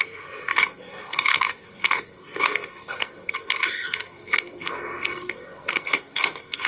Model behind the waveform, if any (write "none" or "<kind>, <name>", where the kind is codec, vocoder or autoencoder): codec, SNAC